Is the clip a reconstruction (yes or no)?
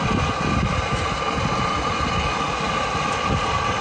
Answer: no